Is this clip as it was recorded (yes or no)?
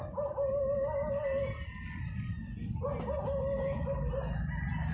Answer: yes